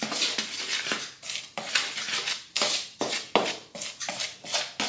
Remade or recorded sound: recorded